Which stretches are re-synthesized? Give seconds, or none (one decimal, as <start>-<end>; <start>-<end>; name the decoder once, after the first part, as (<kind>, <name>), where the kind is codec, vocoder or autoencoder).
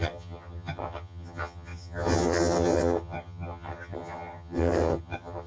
0.0-5.5 (vocoder, HiFi-GAN)